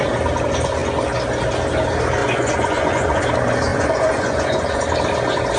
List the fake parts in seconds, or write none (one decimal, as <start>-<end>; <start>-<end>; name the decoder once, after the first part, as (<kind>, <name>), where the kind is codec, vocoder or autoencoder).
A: 2.2-3.2 (vocoder, Vocos); 3.7-4.8